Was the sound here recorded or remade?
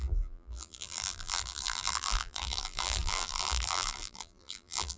remade